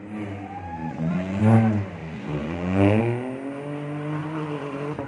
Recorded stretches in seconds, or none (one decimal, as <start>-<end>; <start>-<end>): 0.0-0.8; 1.4-2.0; 3.0-4.2